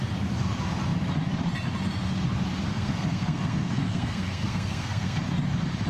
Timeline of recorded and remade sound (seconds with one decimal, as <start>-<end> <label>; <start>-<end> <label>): 0.0-2.7 recorded; 2.7-5.2 remade; 5.2-5.9 recorded

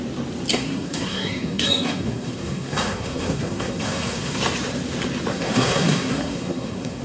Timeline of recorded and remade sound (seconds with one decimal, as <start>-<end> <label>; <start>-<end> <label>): 0.0-0.5 recorded; 0.5-4.4 remade; 4.4-5.3 recorded; 5.3-7.0 remade

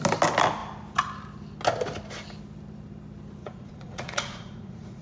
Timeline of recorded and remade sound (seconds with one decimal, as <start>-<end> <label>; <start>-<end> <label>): 0.0-3.4 recorded; 3.4-5.0 remade